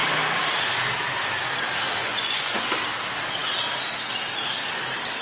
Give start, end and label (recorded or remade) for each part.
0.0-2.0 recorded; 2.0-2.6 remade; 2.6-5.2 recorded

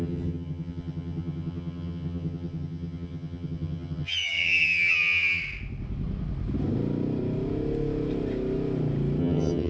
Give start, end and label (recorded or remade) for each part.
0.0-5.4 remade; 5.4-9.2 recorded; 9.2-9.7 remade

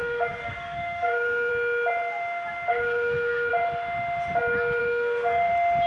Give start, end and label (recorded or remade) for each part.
0.0-1.5 remade; 1.5-2.7 recorded; 2.7-3.5 remade; 3.5-4.8 recorded; 4.8-5.5 remade; 5.5-5.9 recorded

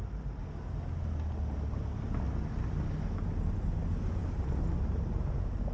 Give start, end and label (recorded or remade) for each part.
0.0-5.7 recorded

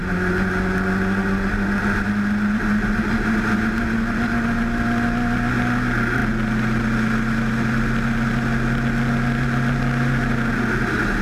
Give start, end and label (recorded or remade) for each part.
0.0-11.2 recorded

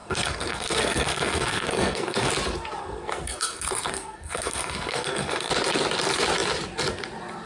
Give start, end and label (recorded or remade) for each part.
0.0-2.3 remade; 2.3-2.8 recorded; 2.8-5.5 remade; 5.5-7.5 recorded

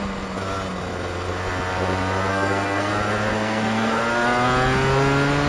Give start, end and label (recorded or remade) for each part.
0.0-2.3 recorded; 2.3-2.9 remade; 2.9-3.3 recorded; 3.3-4.0 remade; 4.0-5.5 recorded

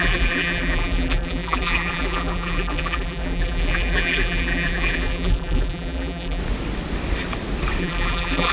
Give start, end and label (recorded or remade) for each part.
0.0-6.4 remade; 6.4-7.8 recorded; 7.8-8.5 remade